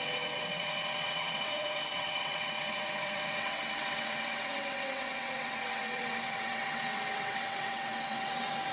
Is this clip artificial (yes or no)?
yes